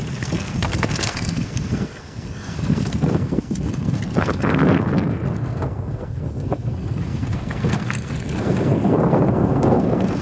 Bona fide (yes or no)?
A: no